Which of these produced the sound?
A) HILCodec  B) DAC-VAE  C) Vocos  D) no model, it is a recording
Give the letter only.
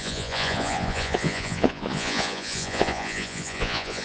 C